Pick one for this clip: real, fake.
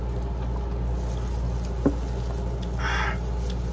real